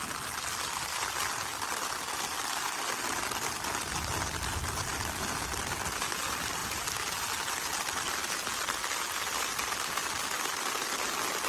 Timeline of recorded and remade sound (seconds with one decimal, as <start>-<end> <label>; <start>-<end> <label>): 0.0-11.5 recorded